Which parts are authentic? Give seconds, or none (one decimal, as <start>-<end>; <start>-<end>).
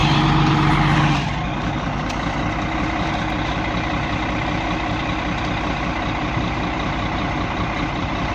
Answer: 0.0-8.3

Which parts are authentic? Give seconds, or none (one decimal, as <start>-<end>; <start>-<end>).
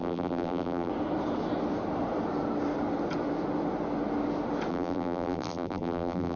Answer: 0.9-4.7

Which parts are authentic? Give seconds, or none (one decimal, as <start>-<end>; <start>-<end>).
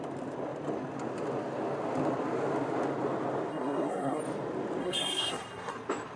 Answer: 0.0-3.5; 4.2-4.8; 5.7-6.2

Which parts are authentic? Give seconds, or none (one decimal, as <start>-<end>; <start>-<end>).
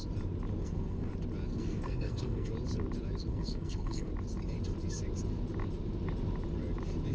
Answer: 0.0-0.6; 1.1-1.5; 2.5-3.3; 4.1-7.1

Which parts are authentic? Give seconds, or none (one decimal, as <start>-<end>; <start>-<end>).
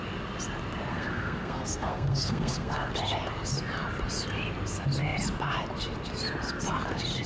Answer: 0.0-0.9; 2.9-7.3